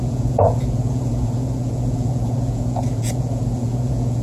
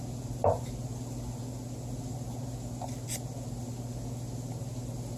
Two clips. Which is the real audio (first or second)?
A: second